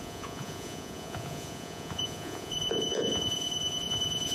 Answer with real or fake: fake